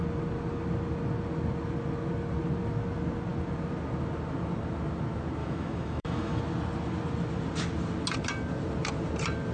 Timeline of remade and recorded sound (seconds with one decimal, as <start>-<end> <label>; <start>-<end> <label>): 0.0-5.4 recorded; 5.4-6.4 remade; 6.4-9.5 recorded

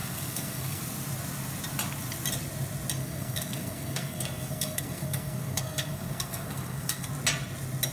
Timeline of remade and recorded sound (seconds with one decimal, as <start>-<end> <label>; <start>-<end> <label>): 0.0-0.8 remade; 0.8-3.0 recorded; 3.0-7.1 remade; 7.1-7.9 recorded